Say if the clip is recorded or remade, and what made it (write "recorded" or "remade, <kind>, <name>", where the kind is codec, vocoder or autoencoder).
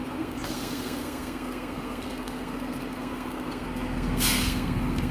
remade, codec, SNAC